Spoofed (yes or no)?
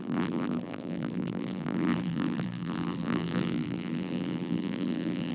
yes